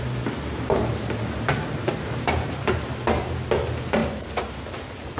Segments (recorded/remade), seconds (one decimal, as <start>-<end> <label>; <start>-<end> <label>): 0.0-1.8 recorded; 1.8-3.3 remade; 3.3-5.2 recorded